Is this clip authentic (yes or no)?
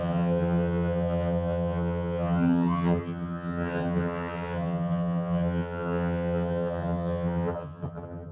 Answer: no